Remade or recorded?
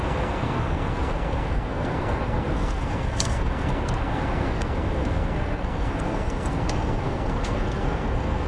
remade